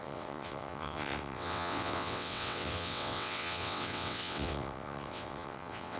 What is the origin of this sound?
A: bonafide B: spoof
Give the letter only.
B